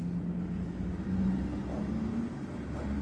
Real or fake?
real